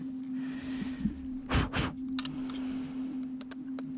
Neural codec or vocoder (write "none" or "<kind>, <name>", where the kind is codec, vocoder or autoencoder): none